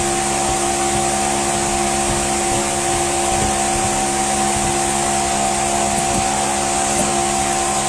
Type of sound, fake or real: real